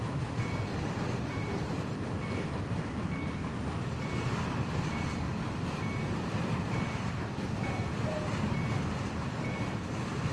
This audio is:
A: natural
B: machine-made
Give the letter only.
B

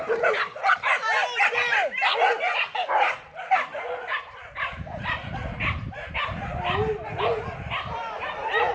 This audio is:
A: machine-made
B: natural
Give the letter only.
B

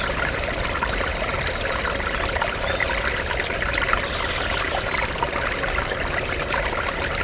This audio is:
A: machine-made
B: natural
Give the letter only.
B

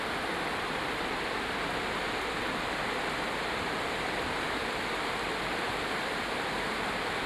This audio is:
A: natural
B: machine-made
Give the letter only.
B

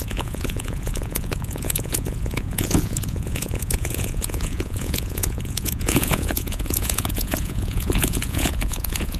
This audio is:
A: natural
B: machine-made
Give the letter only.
B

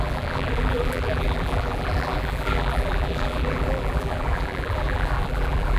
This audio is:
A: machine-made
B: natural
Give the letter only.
A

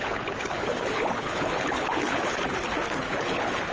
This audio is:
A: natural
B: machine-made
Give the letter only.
B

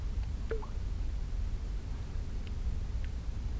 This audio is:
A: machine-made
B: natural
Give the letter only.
B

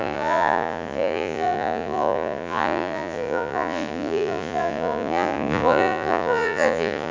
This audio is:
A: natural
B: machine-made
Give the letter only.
B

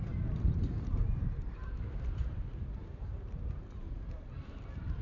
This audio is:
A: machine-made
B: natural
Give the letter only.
A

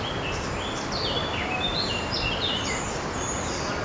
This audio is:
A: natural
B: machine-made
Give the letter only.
A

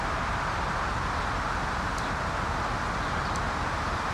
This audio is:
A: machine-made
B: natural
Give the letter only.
B